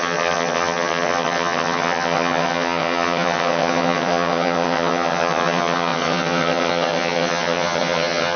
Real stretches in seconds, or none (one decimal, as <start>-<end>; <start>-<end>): none